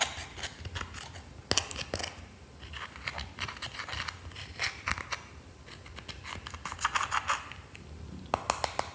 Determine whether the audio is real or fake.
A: real